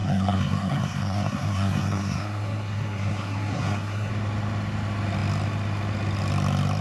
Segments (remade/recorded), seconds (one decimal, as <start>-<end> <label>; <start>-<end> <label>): 0.0-4.1 remade; 4.1-6.8 recorded